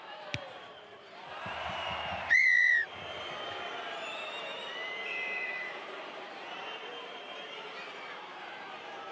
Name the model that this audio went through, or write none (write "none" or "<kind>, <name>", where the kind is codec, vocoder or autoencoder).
vocoder, BigVGAN v2